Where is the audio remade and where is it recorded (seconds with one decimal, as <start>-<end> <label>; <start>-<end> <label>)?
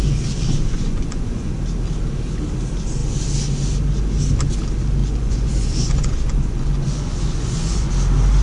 0.0-0.7 recorded; 0.7-1.5 remade; 1.5-5.0 recorded; 5.0-7.9 remade; 7.9-8.4 recorded